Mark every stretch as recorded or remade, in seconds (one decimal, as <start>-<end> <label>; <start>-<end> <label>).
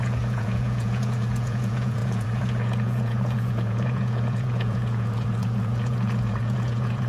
0.0-7.1 remade